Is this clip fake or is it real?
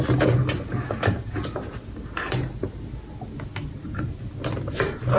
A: real